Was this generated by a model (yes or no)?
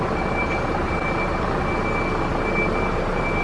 no